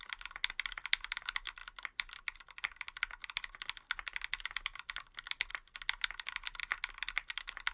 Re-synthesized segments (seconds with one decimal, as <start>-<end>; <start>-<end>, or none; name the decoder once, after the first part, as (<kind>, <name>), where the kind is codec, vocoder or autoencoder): none